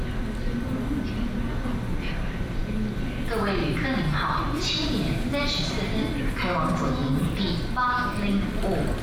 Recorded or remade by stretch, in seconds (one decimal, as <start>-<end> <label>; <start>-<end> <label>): 0.0-9.0 recorded